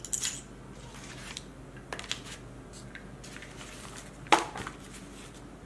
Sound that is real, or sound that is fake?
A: real